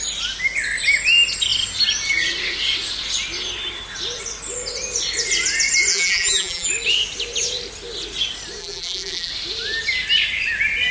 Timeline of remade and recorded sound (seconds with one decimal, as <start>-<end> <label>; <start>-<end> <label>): 0.0-5.9 recorded; 5.9-6.7 remade; 6.7-8.6 recorded; 8.6-9.3 remade; 9.3-10.9 recorded